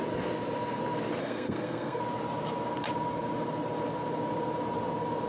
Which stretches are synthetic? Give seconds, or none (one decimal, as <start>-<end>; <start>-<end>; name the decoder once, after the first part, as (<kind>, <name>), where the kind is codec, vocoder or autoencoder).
1.2-2.0 (codec, SNAC)